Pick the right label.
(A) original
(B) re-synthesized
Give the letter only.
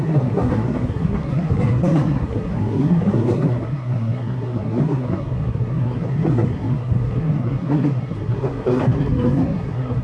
B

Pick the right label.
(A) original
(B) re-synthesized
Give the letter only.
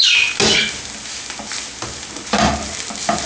A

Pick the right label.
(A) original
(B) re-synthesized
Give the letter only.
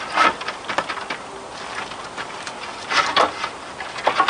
A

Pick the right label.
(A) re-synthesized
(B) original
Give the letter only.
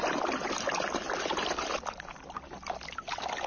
B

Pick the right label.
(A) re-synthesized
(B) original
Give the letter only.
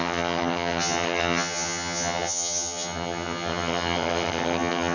A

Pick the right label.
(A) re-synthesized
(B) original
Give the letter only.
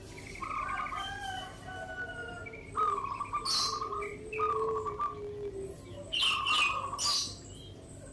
B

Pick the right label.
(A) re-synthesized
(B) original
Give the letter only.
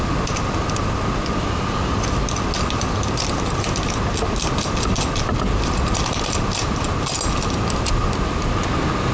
B